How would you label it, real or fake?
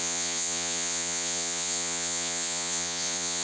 fake